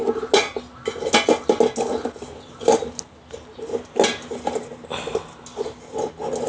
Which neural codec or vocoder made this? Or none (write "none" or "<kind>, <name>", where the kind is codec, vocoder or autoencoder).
none